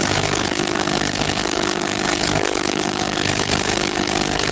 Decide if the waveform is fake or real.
fake